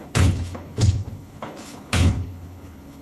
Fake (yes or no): yes